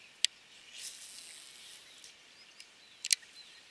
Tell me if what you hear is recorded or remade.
recorded